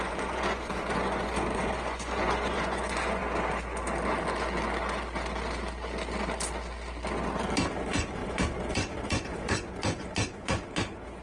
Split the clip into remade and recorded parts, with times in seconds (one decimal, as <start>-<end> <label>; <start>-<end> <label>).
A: 0.0-3.2 remade; 3.2-7.8 recorded; 7.8-11.2 remade

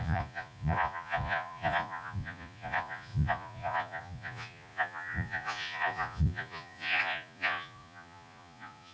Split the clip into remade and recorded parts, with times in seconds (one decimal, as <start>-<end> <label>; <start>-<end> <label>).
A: 0.0-8.9 remade

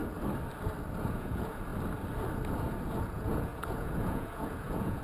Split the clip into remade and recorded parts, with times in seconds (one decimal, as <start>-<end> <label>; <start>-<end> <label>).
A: 0.0-1.0 recorded; 1.0-1.7 remade; 1.7-2.9 recorded; 2.9-5.0 remade

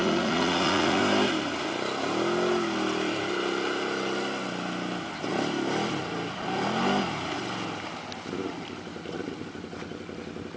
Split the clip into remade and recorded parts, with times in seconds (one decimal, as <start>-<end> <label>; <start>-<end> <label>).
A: 0.0-1.0 remade; 1.0-10.6 recorded

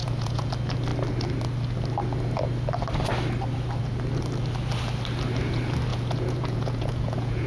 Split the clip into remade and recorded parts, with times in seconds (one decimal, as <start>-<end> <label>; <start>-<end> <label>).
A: 0.0-0.5 remade; 0.5-5.9 recorded; 5.9-7.5 remade